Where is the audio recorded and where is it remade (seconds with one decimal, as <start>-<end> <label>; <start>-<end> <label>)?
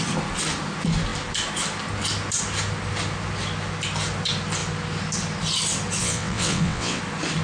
0.0-6.0 recorded; 6.0-7.0 remade; 7.0-7.4 recorded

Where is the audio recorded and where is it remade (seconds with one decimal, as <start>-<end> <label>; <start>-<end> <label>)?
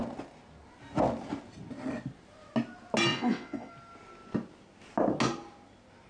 0.0-3.1 recorded; 3.1-3.7 remade; 3.7-6.1 recorded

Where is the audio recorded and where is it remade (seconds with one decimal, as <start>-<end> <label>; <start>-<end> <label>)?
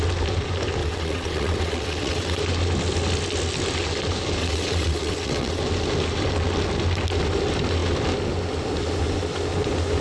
0.0-0.8 recorded; 0.8-2.4 remade; 2.4-4.4 recorded; 4.4-5.6 remade; 5.6-10.0 recorded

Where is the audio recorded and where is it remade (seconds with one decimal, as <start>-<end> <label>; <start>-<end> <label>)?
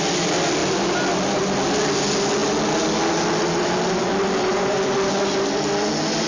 0.0-6.3 recorded